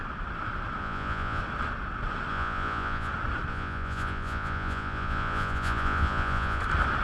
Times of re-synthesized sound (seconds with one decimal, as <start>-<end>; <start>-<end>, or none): 0.8-1.4; 2.3-3.1; 3.5-6.6